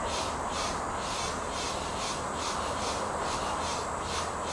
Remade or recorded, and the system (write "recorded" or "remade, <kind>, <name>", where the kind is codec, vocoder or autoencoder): recorded